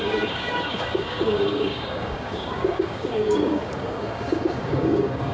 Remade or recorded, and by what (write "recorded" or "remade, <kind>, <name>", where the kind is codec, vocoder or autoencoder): remade, codec, DAC